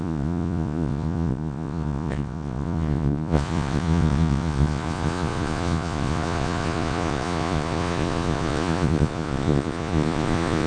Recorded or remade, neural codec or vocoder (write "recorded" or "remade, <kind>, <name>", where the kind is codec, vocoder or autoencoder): remade, vocoder, Vocos